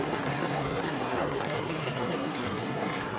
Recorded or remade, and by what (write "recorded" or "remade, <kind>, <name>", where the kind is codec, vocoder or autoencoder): remade, codec, SNAC